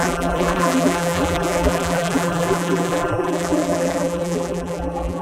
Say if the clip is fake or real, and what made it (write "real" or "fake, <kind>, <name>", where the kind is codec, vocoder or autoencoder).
fake, vocoder, BigVGAN v2